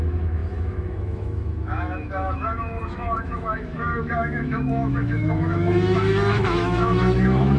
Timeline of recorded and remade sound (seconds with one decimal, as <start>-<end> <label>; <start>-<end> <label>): 0.0-7.6 remade